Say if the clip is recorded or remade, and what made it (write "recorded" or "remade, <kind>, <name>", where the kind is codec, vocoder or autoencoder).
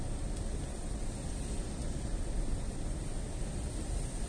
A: recorded